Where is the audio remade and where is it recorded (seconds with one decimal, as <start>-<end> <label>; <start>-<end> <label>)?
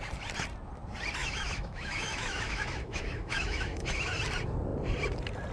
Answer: 0.0-1.2 recorded; 1.2-4.1 remade; 4.1-5.5 recorded